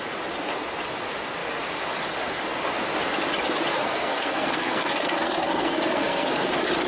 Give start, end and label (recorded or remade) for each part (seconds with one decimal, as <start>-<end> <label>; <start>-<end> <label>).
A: 0.0-3.7 recorded; 3.7-6.5 remade; 6.5-6.9 recorded